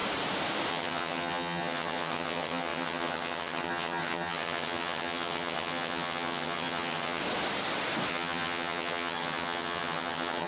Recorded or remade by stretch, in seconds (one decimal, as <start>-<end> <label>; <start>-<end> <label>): 0.0-0.7 recorded; 0.7-7.2 remade; 7.2-8.1 recorded; 8.1-10.5 remade